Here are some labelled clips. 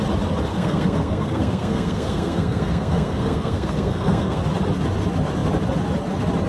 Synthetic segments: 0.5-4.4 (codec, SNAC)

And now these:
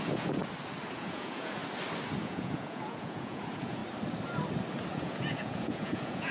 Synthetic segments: 0.0-0.4 (vocoder, Vocos); 0.9-1.6; 2.2-3.8; 4.9-6.3

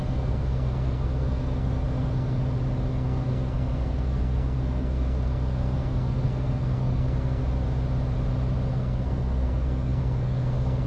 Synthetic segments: 0.0-2.4 (codec, SNAC); 2.9-7.4; 8.7-10.9

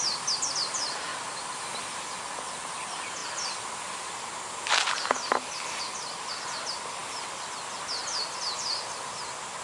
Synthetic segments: 1.1-1.6 (vocoder, BigVGAN v2)

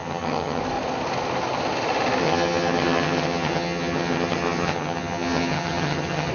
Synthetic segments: 0.0-0.6 (vocoder, HiFi-GAN); 2.2-6.3

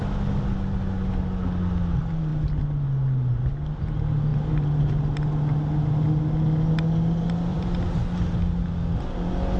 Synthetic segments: 7.5-8.0 (vocoder, BigVGAN v2)

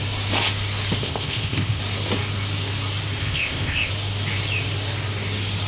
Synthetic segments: 1.0-1.8 (codec, ZipCodec); 3.2-3.9